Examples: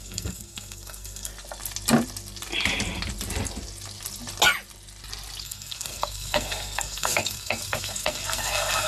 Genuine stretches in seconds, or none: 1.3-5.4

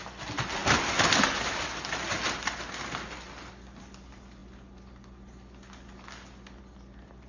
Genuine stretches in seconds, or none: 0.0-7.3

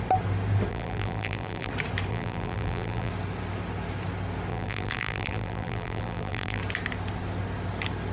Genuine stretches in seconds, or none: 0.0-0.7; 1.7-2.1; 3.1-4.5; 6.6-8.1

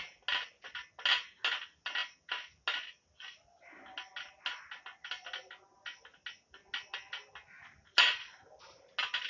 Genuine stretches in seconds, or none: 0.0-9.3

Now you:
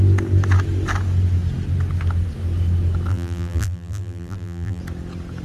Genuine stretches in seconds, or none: 0.0-3.1; 4.8-5.4

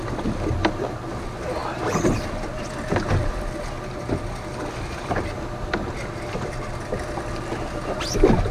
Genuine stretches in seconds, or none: 0.0-8.5

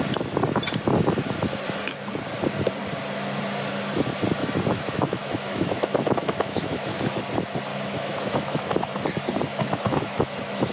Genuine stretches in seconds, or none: 0.0-4.4; 7.2-7.7; 8.6-9.5